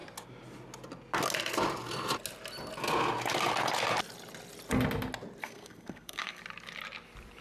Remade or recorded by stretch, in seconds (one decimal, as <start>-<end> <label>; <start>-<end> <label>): 0.0-5.4 recorded; 5.4-6.4 remade; 6.4-7.4 recorded